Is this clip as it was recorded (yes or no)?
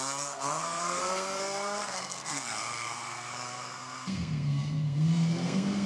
no